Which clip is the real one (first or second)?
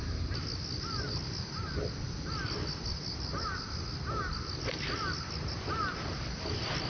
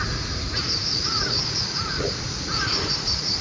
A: first